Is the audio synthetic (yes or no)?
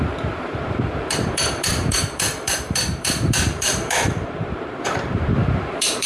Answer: yes